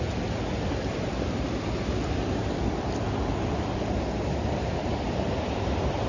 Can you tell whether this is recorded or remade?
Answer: recorded